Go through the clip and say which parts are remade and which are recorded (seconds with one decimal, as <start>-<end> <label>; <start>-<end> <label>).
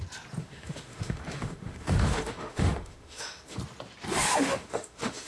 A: 0.0-0.4 recorded; 0.4-3.6 remade; 3.6-4.1 recorded; 4.1-5.3 remade